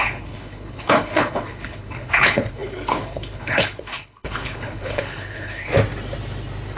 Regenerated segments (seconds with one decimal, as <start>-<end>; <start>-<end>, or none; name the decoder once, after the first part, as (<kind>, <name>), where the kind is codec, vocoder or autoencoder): 0.0-5.7 (codec, HILCodec)